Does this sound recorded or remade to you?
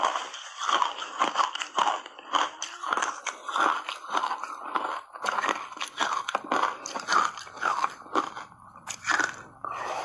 remade